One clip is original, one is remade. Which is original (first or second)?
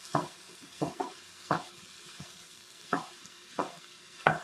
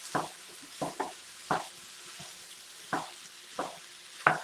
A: second